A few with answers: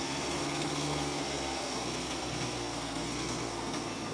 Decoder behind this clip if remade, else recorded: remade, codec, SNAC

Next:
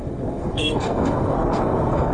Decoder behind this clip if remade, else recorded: remade, codec, SNAC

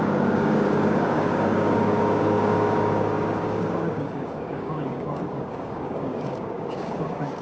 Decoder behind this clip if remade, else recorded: remade, codec, DAC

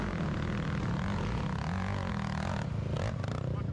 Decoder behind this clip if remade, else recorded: recorded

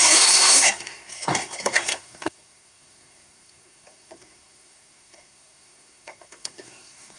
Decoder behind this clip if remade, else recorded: remade, codec, SNAC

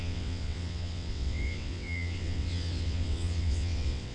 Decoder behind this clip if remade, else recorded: remade, vocoder, WaveNeXt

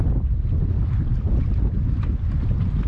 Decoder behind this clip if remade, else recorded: recorded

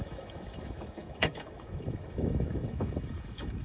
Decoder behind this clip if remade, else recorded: remade, autoencoder, DAC-VAE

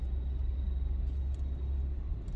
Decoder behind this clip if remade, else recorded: recorded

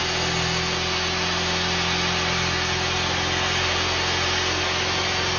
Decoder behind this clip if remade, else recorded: recorded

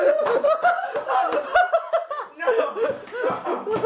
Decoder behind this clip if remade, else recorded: recorded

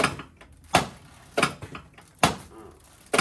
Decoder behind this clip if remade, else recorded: recorded